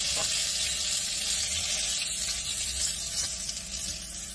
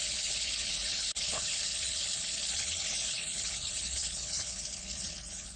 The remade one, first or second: second